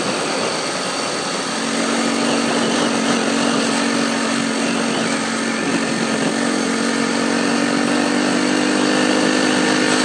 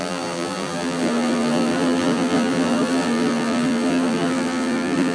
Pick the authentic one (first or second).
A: first